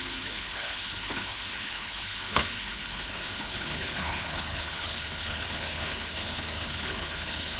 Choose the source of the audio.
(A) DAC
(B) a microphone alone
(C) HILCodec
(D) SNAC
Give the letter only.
C